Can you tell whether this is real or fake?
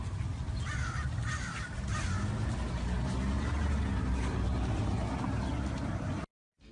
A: real